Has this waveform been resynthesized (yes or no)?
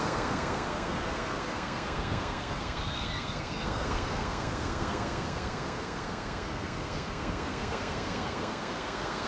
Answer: yes